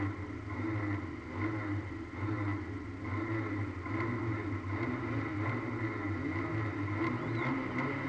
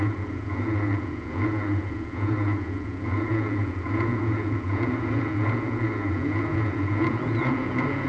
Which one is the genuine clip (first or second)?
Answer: first